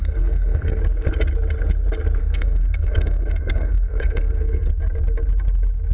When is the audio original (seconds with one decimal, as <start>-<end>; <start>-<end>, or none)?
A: 0.8-2.2; 4.7-5.9